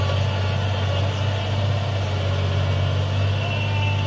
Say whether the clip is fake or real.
real